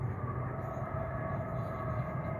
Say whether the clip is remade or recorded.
recorded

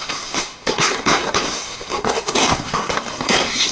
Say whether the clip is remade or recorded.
remade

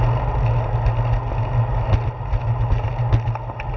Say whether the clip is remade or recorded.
recorded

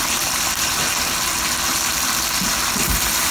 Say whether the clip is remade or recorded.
recorded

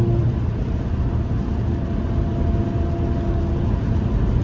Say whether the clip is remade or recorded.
recorded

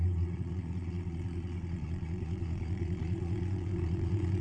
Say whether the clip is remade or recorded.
remade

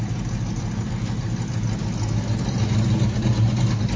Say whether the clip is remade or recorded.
recorded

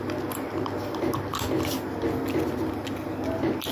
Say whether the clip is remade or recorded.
recorded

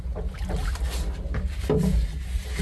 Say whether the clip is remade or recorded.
recorded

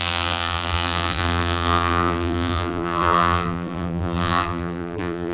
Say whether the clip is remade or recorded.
remade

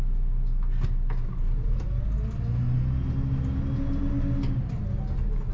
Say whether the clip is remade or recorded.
recorded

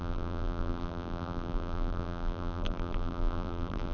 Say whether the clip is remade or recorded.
remade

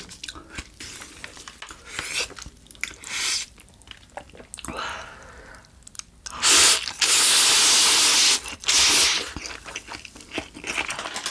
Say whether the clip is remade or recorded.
recorded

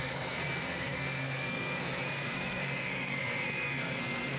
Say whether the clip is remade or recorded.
remade